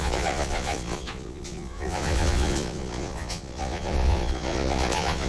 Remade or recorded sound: remade